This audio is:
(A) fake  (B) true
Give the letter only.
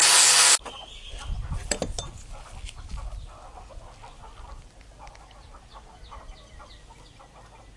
B